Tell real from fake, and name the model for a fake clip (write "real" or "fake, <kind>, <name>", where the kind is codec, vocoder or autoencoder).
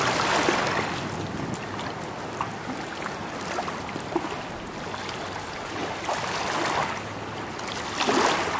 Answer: real